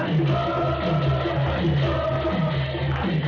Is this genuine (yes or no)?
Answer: yes